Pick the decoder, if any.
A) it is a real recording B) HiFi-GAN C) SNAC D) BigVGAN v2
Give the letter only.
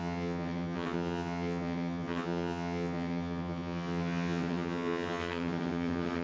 B